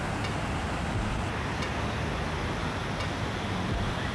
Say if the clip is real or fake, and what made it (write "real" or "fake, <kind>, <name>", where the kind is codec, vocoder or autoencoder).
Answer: real